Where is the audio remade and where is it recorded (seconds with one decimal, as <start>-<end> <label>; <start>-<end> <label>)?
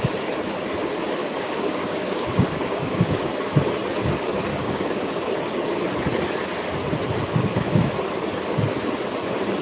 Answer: 0.0-1.2 recorded; 1.2-3.2 remade; 3.2-4.5 recorded; 4.5-5.0 remade; 5.0-7.2 recorded; 7.2-7.9 remade; 7.9-9.6 recorded